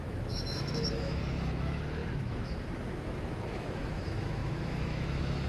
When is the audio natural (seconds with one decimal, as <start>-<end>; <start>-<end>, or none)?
none